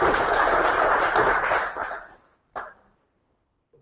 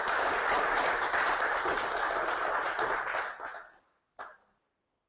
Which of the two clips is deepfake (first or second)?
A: first